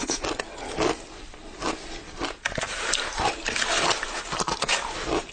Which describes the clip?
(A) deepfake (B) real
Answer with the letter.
B